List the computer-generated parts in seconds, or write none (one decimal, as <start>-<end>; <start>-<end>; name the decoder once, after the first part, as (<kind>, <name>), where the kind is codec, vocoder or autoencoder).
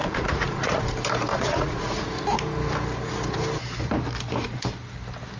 0.0-0.8 (vocoder, Vocos); 1.3-2.1